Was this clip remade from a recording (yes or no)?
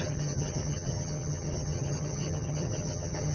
yes